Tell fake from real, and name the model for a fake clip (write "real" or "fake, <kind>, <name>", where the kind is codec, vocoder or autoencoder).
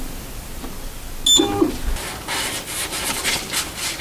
real